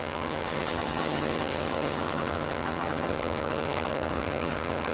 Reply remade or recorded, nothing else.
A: remade